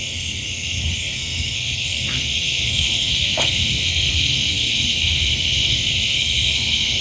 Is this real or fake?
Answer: fake